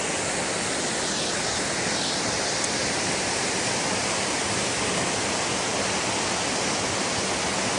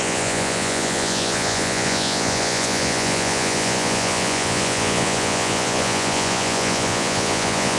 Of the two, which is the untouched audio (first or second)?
first